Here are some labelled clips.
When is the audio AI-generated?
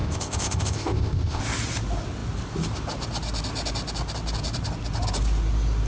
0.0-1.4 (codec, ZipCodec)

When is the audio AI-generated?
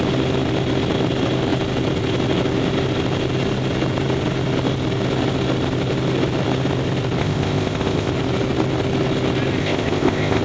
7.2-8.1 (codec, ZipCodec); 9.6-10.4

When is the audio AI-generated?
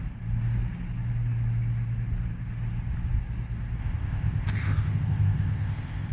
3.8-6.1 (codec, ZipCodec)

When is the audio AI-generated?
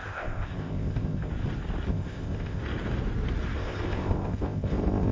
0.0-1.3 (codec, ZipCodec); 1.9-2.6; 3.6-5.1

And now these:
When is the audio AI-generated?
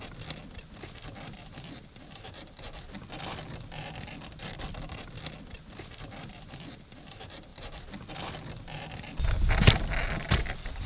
none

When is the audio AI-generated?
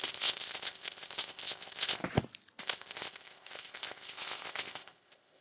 0.0-2.0 (codec, ZipCodec); 2.6-5.4